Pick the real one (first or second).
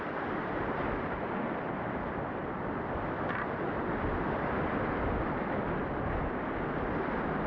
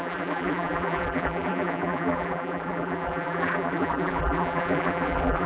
first